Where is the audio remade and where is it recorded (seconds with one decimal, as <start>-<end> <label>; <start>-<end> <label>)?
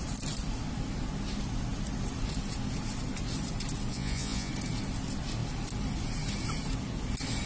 0.0-3.9 recorded; 3.9-4.5 remade; 4.5-7.5 recorded